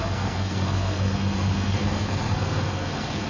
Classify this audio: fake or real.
fake